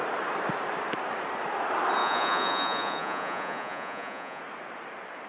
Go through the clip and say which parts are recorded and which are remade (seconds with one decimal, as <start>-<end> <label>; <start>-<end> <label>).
0.0-2.0 recorded; 2.0-4.4 remade; 4.4-5.3 recorded